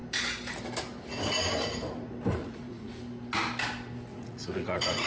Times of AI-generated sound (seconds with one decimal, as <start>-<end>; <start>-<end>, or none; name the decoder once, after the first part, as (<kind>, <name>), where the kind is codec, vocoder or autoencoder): 2.4-2.9 (vocoder, Vocos); 4.1-5.1